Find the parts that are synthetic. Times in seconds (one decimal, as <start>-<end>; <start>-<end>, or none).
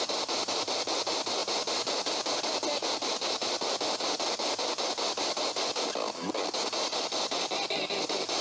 0.0-1.4; 2.4-8.4